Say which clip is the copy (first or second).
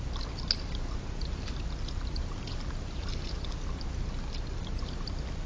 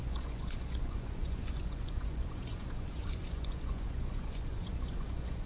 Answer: second